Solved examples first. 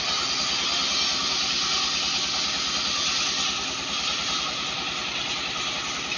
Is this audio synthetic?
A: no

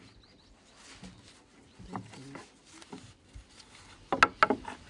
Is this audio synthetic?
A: no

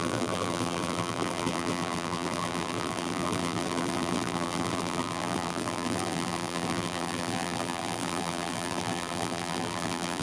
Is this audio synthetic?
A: yes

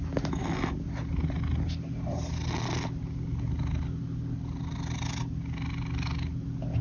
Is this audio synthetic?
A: no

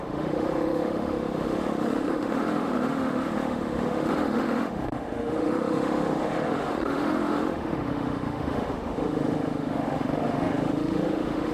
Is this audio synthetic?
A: yes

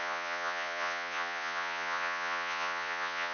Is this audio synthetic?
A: yes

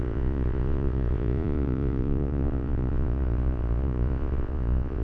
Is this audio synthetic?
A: yes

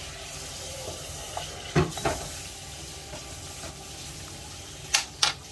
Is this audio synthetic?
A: yes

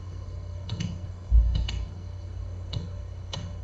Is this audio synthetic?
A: yes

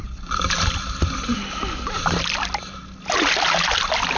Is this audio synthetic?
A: no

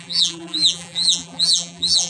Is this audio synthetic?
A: yes